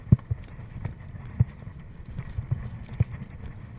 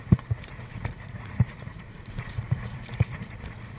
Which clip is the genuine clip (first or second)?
first